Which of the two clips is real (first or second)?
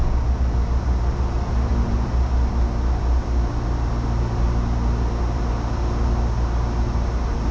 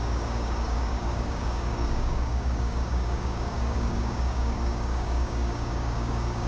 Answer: first